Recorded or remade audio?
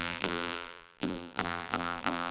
remade